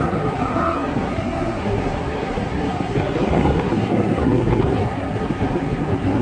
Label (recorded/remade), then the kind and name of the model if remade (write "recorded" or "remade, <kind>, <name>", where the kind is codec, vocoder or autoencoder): remade, codec, SNAC